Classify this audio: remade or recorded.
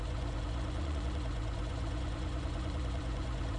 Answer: remade